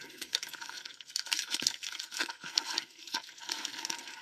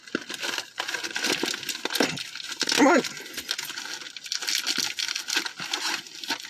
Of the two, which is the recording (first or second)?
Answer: second